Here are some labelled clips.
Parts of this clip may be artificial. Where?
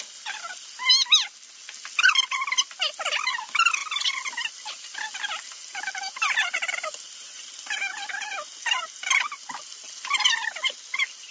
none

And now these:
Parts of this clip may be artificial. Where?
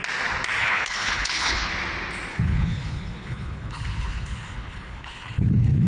0.6-1.7 (codec, HILCodec); 2.3-5.9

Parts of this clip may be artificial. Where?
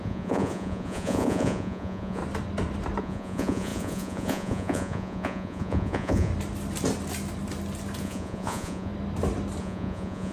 0.0-2.2 (vocoder, Vocos); 3.0-6.3; 8.0-8.9; 9.6-10.3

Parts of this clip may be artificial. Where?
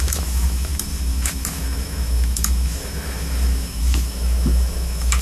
0.0-5.2 (autoencoder, DAC-VAE)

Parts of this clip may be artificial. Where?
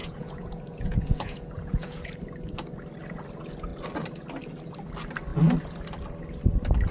0.0-2.2 (vocoder, Vocos)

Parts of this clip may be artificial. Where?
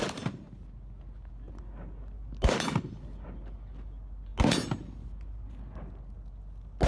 none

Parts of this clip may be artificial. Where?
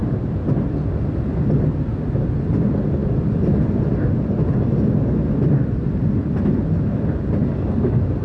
0.0-0.5 (vocoder, BigVGAN v2)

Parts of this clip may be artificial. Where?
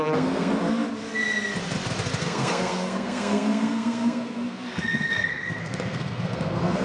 0.0-0.5 (codec, SNAC); 2.2-6.8